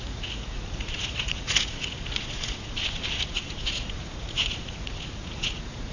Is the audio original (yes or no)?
no